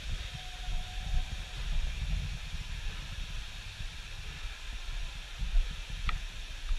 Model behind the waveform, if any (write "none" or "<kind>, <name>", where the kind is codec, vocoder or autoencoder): none